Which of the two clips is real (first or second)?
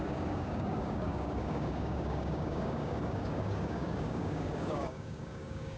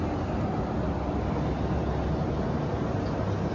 second